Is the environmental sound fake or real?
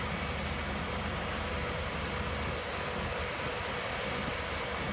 real